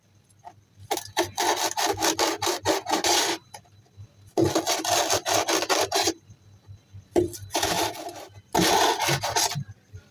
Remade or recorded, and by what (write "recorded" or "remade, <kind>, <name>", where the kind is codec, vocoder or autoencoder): recorded